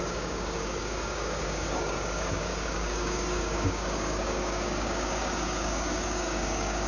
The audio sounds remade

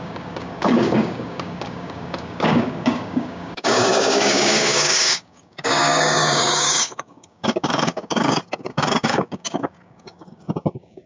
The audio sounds remade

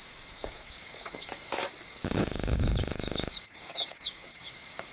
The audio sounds remade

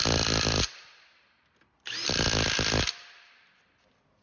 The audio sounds recorded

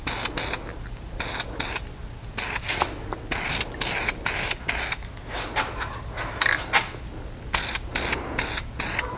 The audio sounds recorded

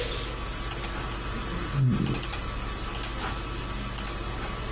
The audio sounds recorded